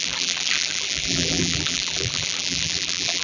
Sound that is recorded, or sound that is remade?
remade